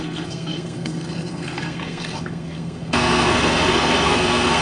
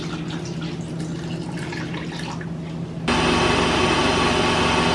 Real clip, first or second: second